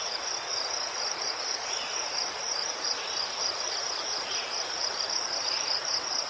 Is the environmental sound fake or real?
fake